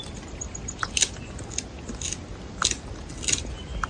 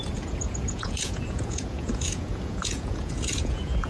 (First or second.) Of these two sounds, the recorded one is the first